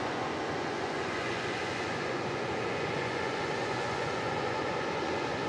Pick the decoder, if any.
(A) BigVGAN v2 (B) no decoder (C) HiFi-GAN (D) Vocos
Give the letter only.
D